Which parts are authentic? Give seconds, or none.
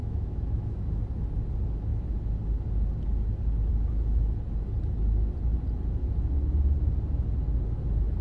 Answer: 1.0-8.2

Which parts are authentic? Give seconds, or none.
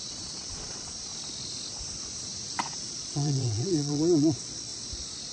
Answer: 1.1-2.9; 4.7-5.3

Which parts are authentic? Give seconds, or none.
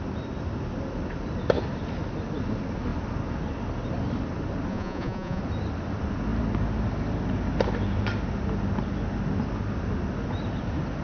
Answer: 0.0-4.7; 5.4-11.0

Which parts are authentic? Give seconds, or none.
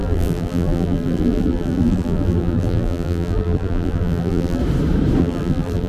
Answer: 4.6-5.2